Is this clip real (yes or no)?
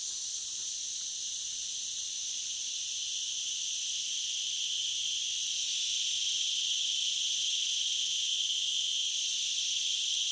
no